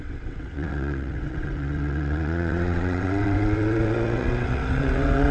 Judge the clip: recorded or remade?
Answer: remade